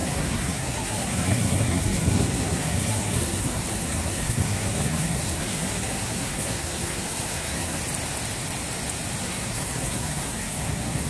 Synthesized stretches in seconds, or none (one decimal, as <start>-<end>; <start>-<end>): 0.0-7.8; 9.2-11.1